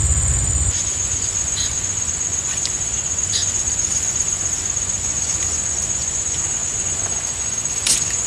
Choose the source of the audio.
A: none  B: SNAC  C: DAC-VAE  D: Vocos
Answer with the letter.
D